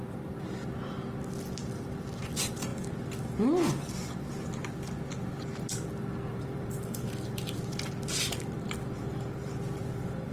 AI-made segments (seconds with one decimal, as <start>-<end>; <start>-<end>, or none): 2.2-2.7; 6.4-10.3

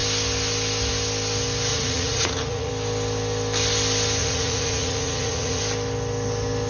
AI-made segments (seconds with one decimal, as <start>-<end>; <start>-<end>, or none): 1.7-2.7; 4.2-5.6

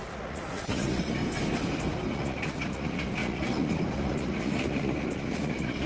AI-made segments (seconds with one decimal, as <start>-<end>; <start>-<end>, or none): 0.0-1.2; 2.1-5.9

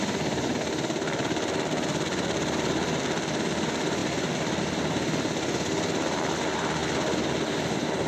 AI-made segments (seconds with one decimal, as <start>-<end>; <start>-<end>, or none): none

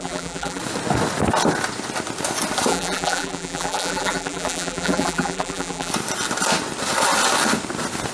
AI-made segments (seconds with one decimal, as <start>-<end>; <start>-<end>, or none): 0.0-0.6; 2.7-5.9

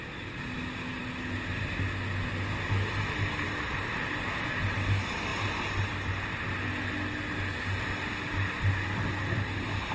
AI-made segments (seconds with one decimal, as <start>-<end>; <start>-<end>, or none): none

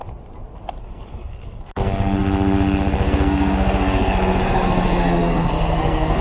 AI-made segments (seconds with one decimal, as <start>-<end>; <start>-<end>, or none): 0.8-6.2